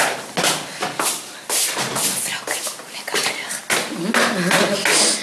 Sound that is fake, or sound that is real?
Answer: real